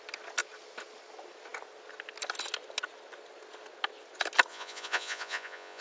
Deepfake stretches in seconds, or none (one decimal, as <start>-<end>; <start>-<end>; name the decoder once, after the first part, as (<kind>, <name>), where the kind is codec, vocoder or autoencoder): 4.5-5.8 (vocoder, Vocos)